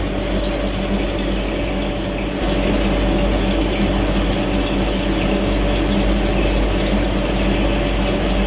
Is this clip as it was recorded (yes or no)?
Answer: yes